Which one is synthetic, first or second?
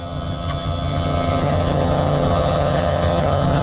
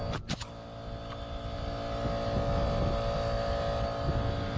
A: first